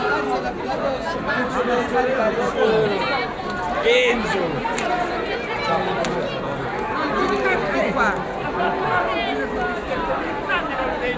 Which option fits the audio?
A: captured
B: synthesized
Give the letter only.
A